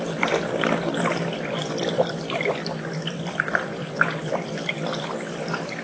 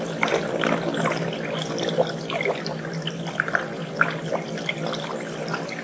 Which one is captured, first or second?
second